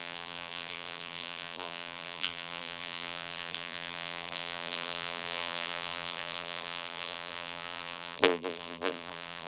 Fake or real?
fake